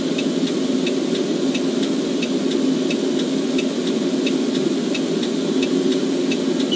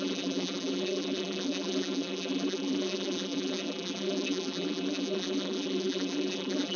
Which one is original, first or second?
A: first